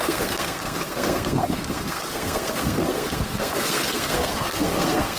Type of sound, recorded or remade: remade